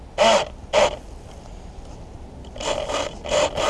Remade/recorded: recorded